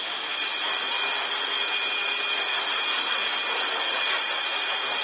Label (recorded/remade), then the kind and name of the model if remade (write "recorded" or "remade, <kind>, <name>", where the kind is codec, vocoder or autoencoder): recorded